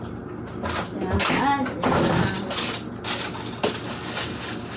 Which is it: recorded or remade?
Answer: recorded